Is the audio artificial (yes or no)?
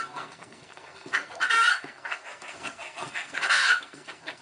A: yes